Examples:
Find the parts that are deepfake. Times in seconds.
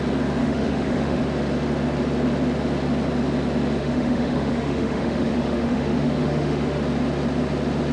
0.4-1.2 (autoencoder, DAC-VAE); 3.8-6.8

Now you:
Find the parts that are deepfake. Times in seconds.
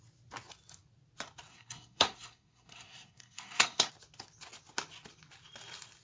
1.5-3.9 (codec, SNAC)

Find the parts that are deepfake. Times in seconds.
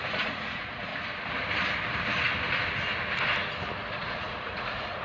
0.0-0.9 (vocoder, Vocos); 3.9-5.0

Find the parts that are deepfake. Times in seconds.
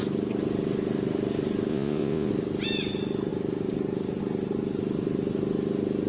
1.7-2.3 (vocoder, Vocos)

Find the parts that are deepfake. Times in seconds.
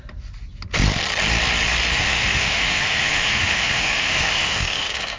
2.0-5.2 (autoencoder, DAC-VAE)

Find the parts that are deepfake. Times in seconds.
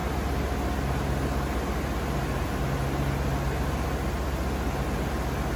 none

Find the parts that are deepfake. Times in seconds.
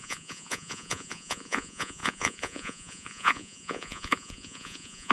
0.0-5.1 (vocoder, Vocos)